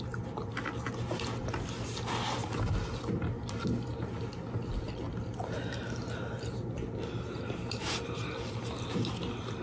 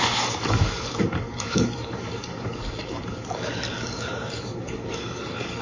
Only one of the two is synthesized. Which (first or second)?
second